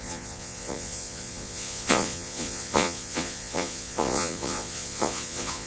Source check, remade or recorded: remade